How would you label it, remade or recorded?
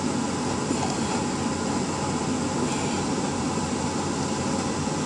recorded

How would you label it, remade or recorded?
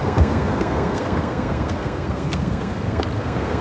remade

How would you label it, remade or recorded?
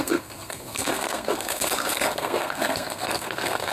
remade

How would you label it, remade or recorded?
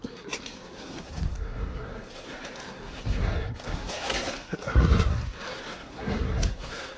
remade